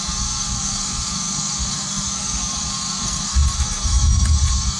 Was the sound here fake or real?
fake